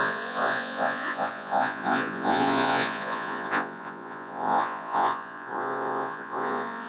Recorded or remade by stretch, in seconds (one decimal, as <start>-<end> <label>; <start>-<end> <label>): 0.0-6.9 remade